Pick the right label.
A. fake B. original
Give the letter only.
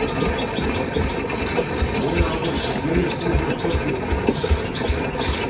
B